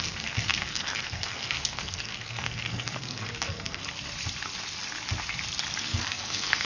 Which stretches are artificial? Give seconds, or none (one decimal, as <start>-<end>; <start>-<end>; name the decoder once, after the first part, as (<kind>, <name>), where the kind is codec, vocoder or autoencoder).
0.0-3.8 (codec, SNAC); 5.8-6.6